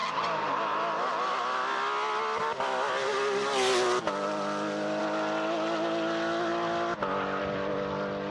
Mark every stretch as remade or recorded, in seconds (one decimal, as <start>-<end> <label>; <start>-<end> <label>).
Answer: 0.0-8.3 recorded

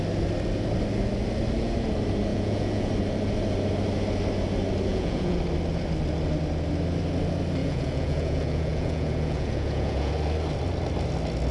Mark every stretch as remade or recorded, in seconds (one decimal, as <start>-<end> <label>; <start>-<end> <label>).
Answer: 0.0-2.3 recorded; 2.3-2.9 remade; 2.9-4.9 recorded; 4.9-5.4 remade; 5.4-7.6 recorded; 7.6-10.1 remade; 10.1-11.5 recorded

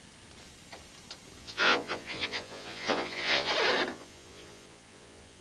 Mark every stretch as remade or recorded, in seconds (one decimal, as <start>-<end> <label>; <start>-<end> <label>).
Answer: 0.0-1.4 recorded; 1.4-3.5 remade; 3.5-3.9 recorded; 3.9-5.4 remade